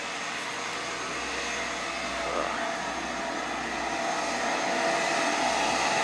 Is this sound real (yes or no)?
yes